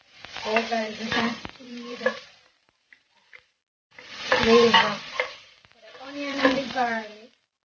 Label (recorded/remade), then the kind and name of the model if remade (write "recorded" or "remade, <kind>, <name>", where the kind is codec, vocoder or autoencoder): remade, vocoder, BigVGAN v2